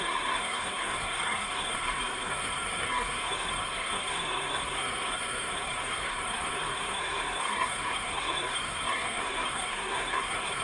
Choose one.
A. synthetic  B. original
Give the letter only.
A